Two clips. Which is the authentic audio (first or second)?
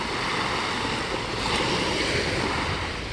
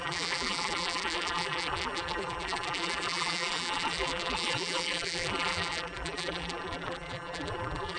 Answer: first